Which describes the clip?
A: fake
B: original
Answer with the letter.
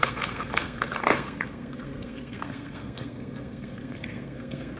A